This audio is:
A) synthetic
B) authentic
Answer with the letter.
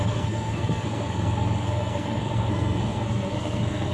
A